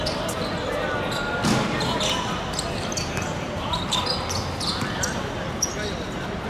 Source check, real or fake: real